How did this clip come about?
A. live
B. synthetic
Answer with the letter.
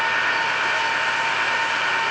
A